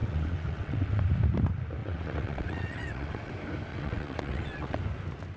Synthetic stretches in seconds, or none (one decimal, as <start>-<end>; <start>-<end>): 0.0-1.0; 1.8-3.3; 3.7-4.8